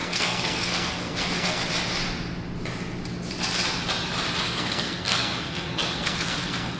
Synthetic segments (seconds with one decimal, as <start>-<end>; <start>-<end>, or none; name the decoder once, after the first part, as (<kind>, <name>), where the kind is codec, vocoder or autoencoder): 0.0-1.6 (codec, SNAC); 4.4-6.8